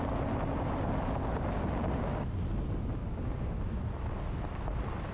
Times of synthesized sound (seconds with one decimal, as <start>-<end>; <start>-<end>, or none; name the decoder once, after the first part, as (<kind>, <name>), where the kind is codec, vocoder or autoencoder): 3.0-3.8 (codec, DAC)